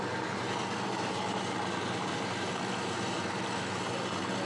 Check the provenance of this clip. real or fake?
real